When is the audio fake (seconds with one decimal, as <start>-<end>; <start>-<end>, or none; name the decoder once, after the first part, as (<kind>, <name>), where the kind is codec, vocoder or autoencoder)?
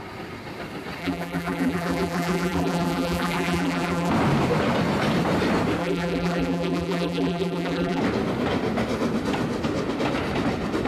1.0-4.1 (vocoder, BigVGAN v2); 5.8-8.0